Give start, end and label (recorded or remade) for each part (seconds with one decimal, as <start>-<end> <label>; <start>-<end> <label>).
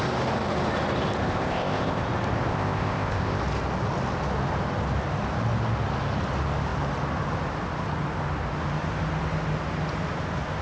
0.0-1.2 recorded; 1.2-2.0 remade; 2.0-2.5 recorded; 2.5-3.4 remade; 3.4-10.6 recorded